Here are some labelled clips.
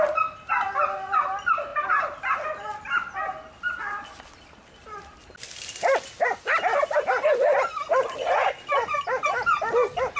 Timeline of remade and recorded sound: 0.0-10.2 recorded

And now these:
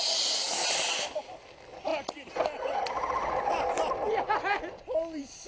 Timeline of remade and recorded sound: 0.0-5.5 recorded